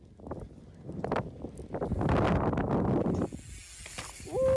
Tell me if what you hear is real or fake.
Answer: real